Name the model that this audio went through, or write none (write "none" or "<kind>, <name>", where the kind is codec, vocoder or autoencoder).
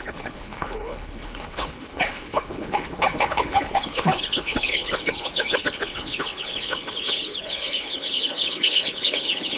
codec, HILCodec